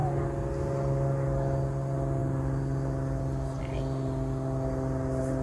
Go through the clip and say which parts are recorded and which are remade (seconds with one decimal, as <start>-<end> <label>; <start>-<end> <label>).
0.0-5.4 recorded